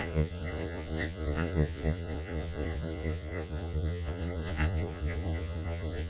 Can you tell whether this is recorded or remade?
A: remade